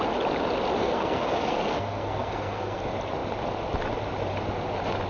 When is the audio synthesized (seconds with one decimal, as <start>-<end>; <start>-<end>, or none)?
0.8-2.8

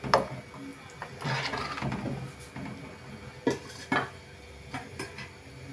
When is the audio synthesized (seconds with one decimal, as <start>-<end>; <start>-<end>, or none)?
none

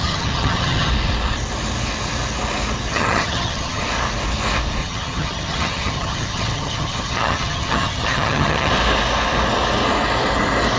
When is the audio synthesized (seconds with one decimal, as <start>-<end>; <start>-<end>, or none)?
0.0-0.9; 2.9-3.8; 4.8-8.7

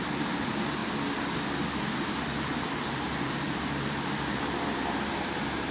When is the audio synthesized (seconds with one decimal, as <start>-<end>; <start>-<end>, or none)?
0.0-0.8; 2.4-5.7

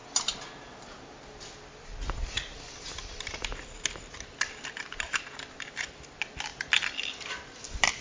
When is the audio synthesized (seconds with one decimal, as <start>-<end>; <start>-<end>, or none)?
none